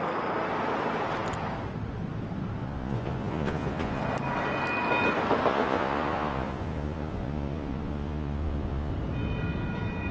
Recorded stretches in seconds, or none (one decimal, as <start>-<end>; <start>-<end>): 0.0-2.6; 4.0-5.5; 8.9-10.1